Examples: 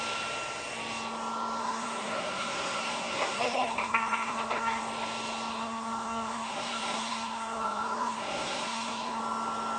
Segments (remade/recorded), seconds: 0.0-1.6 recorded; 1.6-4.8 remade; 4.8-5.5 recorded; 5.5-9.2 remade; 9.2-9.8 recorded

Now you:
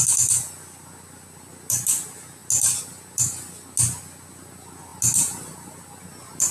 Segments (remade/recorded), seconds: 0.0-6.5 recorded

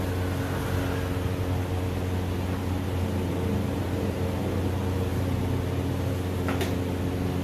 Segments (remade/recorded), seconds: 0.0-7.4 recorded

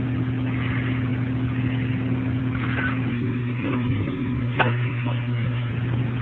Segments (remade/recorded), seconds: 0.0-3.1 recorded; 3.1-5.7 remade; 5.7-6.2 recorded

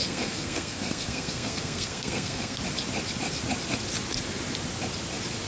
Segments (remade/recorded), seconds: 0.0-2.6 remade; 2.6-5.5 recorded

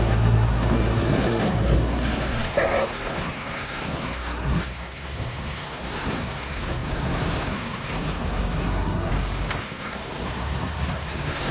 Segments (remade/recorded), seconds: 0.0-9.1 remade; 9.1-9.6 recorded; 9.6-11.5 remade

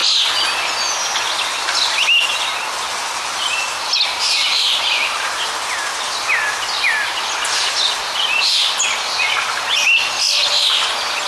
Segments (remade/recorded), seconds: 0.0-11.3 recorded